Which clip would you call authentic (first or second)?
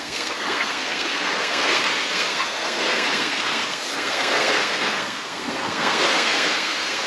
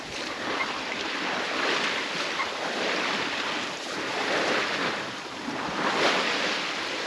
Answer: second